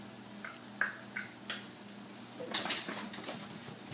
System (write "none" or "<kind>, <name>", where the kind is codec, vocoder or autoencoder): none